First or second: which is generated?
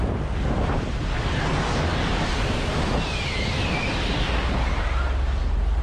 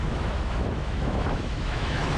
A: second